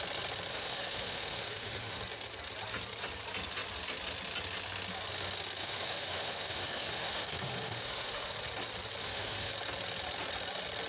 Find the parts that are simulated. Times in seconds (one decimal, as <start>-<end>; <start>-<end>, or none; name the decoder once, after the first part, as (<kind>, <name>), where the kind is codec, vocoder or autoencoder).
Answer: 0.5-2.0 (autoencoder, DAC-VAE); 5.6-8.3; 9.0-9.5